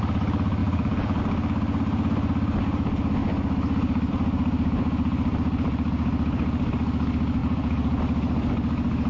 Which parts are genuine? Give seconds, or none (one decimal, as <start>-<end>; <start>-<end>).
0.0-0.6; 1.2-7.4; 8.0-9.1